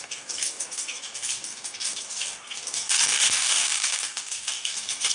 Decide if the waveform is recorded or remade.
remade